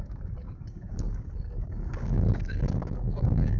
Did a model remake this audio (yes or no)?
yes